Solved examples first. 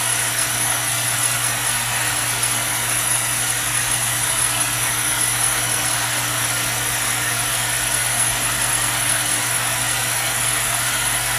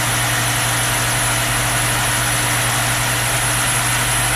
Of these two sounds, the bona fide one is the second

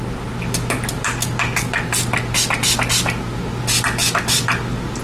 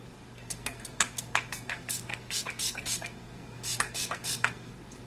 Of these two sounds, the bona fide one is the first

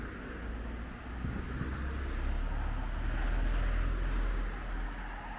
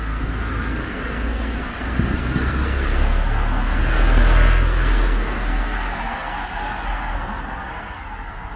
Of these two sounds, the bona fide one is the first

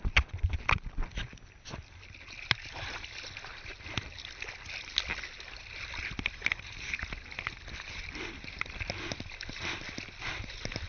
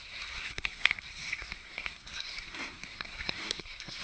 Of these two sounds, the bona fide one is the first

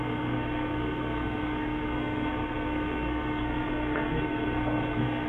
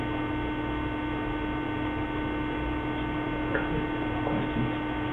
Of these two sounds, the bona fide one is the second